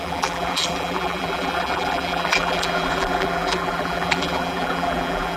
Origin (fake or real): fake